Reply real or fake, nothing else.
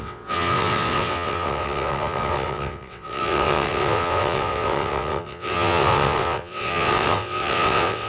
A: fake